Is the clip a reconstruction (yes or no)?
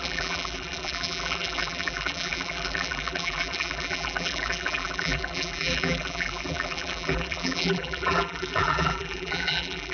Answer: yes